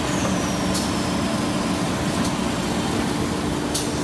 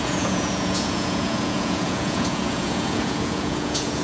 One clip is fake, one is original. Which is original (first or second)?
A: first